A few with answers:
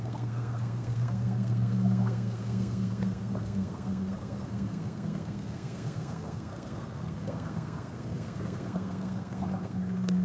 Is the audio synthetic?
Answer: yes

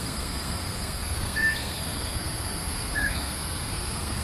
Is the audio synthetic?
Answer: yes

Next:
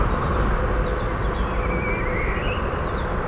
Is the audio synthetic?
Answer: no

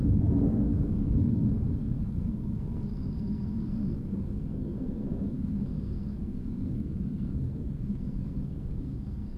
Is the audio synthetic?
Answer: yes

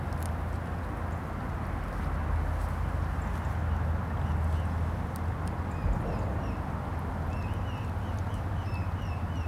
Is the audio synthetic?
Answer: no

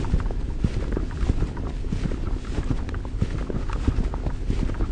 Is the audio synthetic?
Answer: no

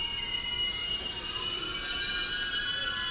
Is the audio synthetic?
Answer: no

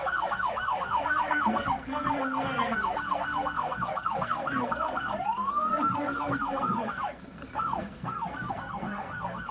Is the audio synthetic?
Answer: yes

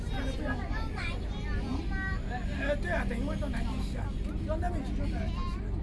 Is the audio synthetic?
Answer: no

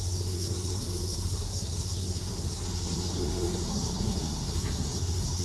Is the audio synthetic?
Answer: yes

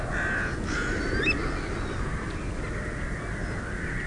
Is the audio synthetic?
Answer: no